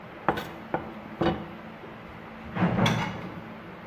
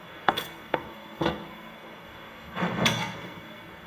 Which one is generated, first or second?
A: second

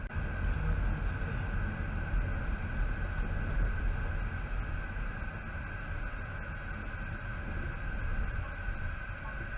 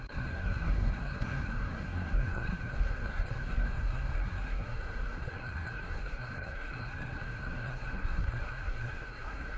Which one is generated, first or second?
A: second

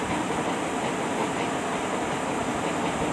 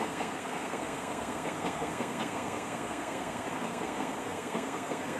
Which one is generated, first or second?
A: second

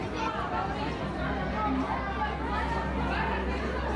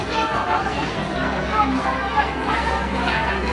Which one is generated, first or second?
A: second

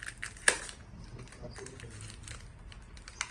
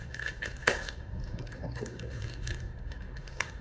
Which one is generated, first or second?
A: second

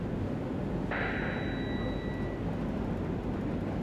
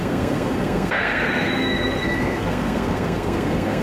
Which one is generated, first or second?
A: second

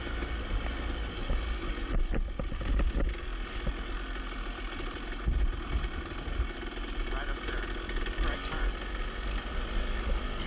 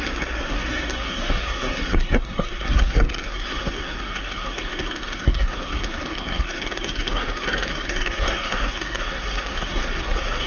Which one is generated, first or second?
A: second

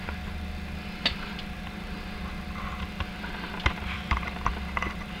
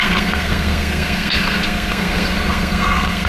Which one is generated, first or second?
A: second